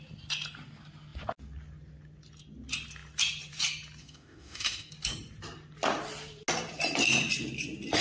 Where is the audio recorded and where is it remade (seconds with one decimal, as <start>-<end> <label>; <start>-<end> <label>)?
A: 0.0-4.0 recorded; 4.0-4.9 remade; 4.9-8.0 recorded